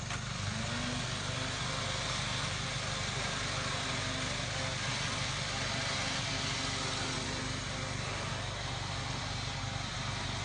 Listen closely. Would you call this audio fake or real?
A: real